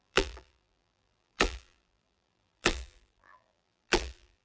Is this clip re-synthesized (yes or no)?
yes